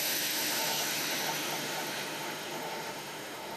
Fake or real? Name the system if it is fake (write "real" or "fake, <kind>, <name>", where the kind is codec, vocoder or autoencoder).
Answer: fake, autoencoder, DAC-VAE